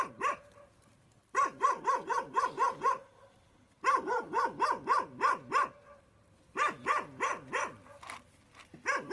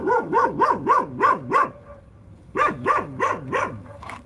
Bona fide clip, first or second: first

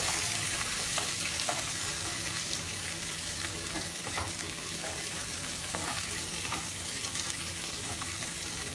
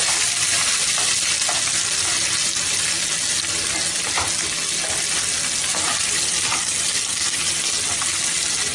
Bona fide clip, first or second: second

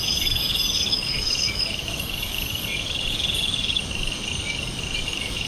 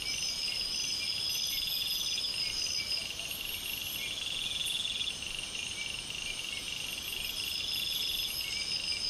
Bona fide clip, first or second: second